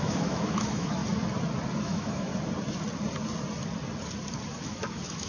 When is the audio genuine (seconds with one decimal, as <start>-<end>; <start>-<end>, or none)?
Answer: 1.0-1.8; 2.3-4.6